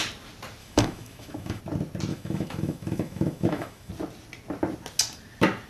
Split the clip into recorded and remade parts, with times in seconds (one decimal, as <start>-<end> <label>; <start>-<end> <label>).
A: 0.0-0.6 recorded; 0.6-1.6 remade; 1.6-2.1 recorded; 2.1-3.9 remade; 3.9-5.7 recorded